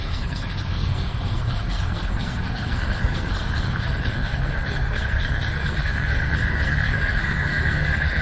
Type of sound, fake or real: fake